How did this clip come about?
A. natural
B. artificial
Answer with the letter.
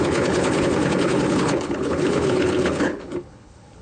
B